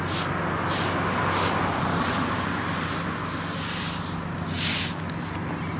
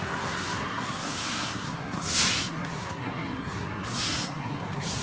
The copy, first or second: second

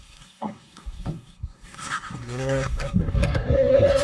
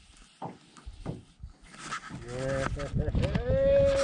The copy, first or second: first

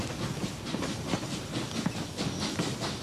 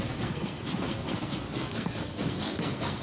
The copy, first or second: second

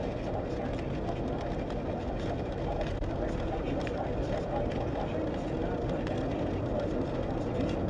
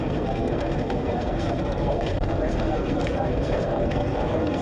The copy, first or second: second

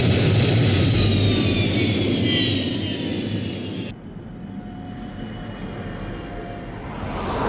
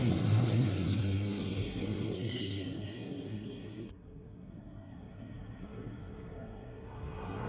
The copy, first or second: second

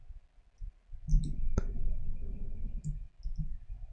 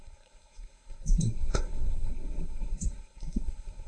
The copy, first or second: second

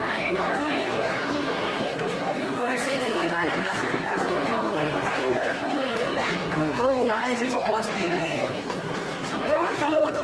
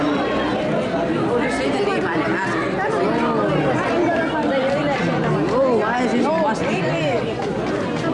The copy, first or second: first